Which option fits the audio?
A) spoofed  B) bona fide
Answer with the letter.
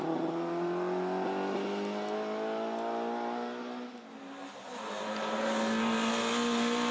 B